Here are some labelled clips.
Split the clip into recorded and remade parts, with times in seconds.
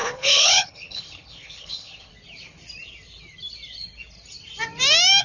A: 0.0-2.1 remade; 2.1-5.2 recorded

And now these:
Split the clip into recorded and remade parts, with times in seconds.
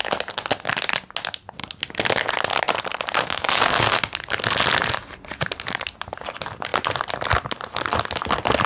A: 0.0-3.2 recorded; 3.2-4.0 remade; 4.0-8.7 recorded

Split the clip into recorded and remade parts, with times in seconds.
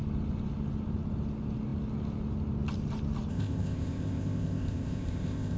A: 0.0-3.3 recorded; 3.3-5.6 remade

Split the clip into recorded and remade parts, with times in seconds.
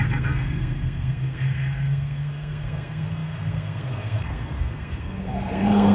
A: 0.0-5.9 remade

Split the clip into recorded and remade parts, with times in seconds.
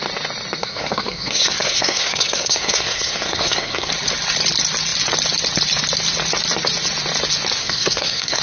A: 0.0-0.6 recorded; 0.6-3.9 remade; 3.9-7.6 recorded; 7.6-8.4 remade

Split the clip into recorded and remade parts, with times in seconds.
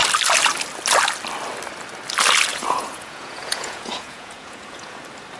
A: 0.0-2.5 recorded; 2.5-5.0 remade; 5.0-5.4 recorded